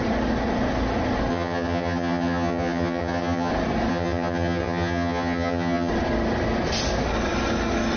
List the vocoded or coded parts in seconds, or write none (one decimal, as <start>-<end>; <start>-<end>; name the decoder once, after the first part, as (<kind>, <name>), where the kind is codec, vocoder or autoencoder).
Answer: 1.3-3.5 (vocoder, HiFi-GAN); 3.9-5.9